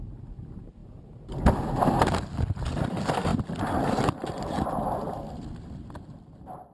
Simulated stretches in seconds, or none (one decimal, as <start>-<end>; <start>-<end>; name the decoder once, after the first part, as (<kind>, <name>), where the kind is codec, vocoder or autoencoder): 0.0-0.8 (vocoder, BigVGAN v2); 1.5-3.3; 4.4-6.7